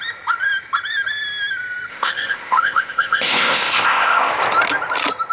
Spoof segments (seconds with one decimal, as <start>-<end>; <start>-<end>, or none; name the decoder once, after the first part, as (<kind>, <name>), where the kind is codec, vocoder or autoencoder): 1.9-4.3 (codec, ZipCodec)